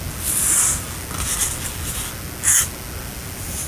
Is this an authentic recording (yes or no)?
yes